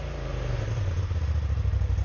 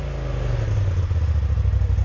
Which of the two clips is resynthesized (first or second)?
first